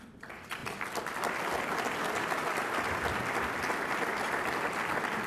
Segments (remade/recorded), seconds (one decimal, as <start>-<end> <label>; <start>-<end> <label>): 0.0-5.3 recorded